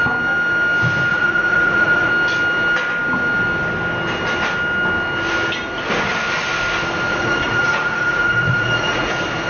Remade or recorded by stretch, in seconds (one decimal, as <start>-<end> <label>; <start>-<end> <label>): 0.0-1.1 recorded; 1.1-2.1 remade; 2.1-7.1 recorded; 7.1-9.1 remade; 9.1-9.5 recorded